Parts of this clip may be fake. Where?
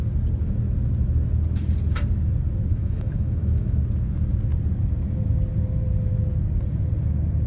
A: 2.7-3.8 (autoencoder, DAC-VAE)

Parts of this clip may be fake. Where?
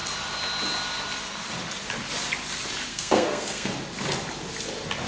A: 2.9-3.7 (codec, SNAC)